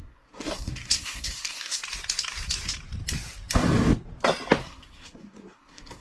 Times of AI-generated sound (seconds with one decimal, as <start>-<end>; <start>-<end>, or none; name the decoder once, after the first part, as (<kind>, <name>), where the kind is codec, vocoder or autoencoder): 0.0-1.8 (codec, SNAC); 4.6-6.0